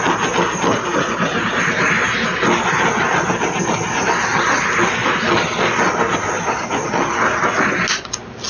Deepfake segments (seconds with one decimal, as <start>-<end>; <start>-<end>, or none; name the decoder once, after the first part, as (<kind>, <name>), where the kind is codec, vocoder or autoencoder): none